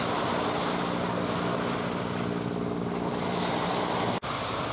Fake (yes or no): no